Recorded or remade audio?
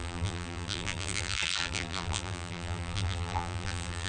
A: remade